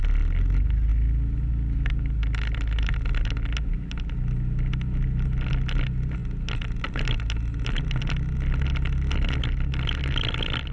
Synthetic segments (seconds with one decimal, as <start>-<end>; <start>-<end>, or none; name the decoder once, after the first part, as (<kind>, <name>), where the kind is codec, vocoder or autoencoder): none